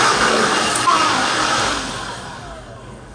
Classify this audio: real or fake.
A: fake